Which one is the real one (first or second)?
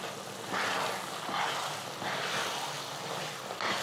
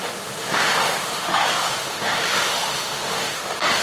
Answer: first